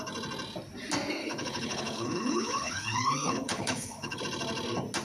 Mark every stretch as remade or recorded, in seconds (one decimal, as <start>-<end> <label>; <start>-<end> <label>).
0.0-1.2 recorded; 1.2-4.2 remade; 4.2-5.0 recorded

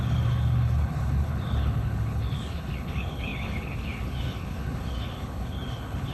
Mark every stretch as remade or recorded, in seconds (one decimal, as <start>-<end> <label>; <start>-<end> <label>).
0.0-6.1 remade

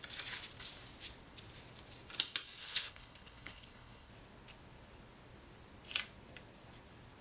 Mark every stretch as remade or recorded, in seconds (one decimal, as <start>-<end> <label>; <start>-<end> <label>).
0.0-2.6 recorded; 2.6-4.1 remade; 4.1-7.2 recorded